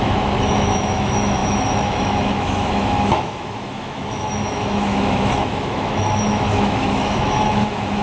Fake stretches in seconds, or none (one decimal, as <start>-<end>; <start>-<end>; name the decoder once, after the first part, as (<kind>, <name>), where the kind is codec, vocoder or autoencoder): 0.0-8.0 (autoencoder, DAC-VAE)